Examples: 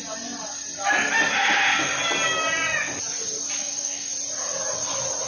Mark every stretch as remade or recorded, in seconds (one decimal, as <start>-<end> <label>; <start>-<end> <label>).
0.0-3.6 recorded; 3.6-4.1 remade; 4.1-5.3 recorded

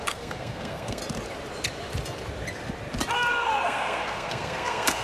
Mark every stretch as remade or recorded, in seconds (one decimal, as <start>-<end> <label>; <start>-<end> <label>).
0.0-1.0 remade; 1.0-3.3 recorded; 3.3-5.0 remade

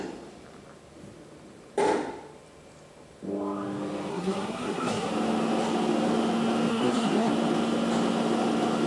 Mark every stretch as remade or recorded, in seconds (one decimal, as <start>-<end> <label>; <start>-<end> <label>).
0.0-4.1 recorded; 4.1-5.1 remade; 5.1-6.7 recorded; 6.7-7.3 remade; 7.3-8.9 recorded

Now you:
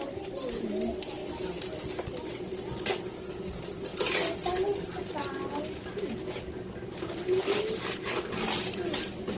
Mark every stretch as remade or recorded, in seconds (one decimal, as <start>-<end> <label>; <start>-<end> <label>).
0.0-9.4 recorded